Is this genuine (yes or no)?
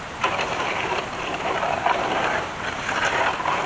no